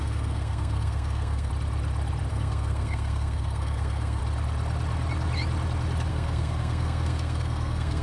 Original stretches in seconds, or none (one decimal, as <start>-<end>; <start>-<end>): 1.5-2.3; 4.2-6.1